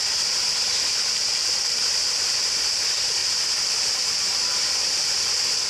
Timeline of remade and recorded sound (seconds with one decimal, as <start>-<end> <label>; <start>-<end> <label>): 0.0-4.3 remade; 4.3-5.7 recorded